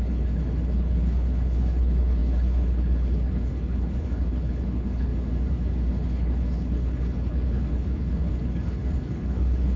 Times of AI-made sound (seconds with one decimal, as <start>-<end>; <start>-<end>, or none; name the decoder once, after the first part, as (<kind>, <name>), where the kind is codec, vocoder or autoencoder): 0.0-5.1 (codec, HILCodec); 5.9-9.8